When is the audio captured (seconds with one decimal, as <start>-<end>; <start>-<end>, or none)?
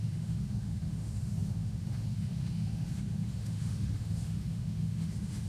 none